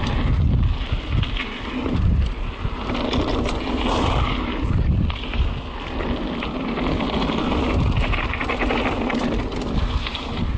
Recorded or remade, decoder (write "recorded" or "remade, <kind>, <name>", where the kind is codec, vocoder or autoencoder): recorded